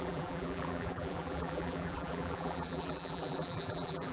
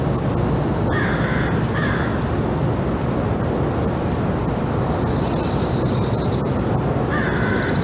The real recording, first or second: second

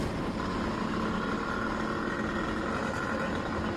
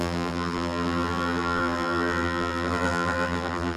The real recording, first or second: first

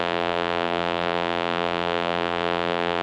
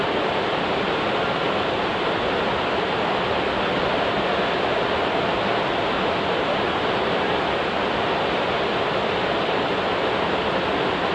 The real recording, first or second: second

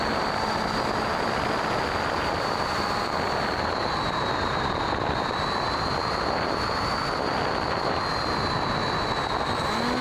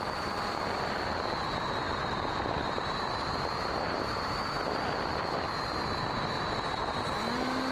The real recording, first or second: first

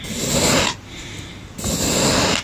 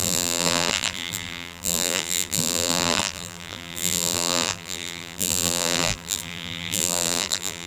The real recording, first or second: first